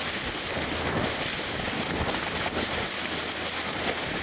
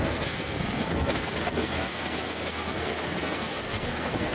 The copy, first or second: second